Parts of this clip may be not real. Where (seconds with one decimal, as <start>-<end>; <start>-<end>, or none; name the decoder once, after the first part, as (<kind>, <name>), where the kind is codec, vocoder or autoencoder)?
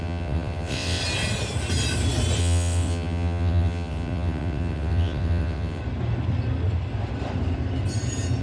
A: 0.0-1.0 (vocoder, WaveNeXt); 2.4-5.8